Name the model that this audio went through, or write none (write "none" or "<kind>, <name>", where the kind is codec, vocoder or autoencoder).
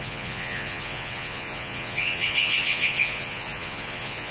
vocoder, Vocos